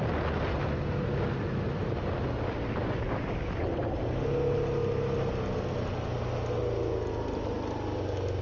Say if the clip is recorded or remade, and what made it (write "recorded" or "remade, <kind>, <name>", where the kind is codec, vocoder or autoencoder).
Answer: recorded